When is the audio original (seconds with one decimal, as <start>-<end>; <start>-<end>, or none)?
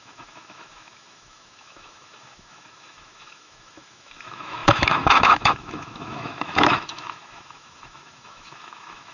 none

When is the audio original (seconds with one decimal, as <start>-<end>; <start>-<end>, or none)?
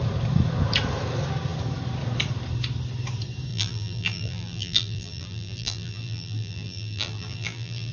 0.0-3.5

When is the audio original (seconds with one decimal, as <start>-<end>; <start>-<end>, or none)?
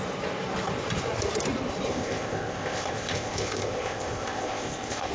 0.0-1.9